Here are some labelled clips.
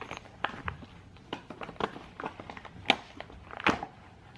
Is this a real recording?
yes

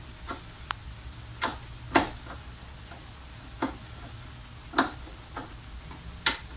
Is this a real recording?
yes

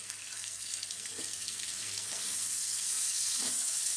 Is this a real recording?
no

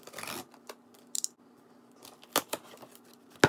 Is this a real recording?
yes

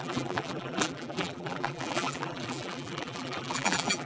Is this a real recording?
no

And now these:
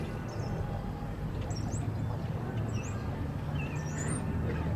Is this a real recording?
yes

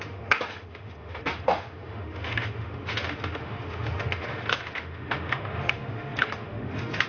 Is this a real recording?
no